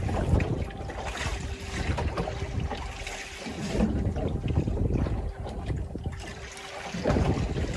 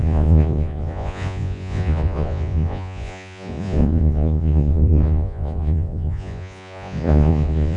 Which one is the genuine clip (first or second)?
first